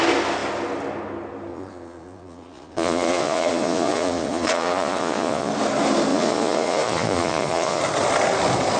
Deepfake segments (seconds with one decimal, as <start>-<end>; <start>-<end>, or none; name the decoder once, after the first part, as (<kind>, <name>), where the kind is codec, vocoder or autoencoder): 1.5-5.5 (vocoder, Vocos); 6.1-7.8